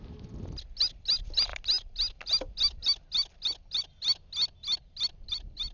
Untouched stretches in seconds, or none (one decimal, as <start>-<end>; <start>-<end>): 0.0-5.7